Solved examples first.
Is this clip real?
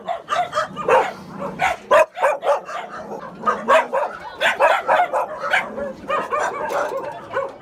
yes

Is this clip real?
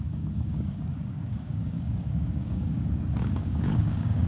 no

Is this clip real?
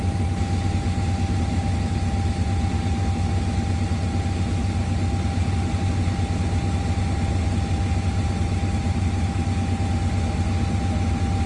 yes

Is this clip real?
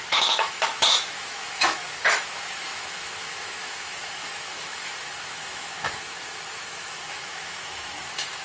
no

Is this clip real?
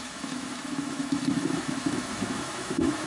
no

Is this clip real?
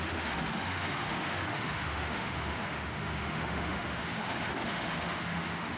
no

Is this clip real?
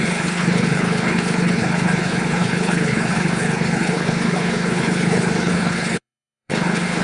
no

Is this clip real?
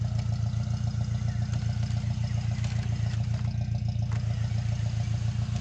yes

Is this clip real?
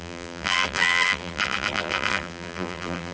no